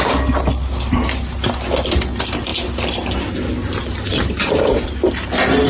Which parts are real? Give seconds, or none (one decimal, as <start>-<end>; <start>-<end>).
0.0-5.7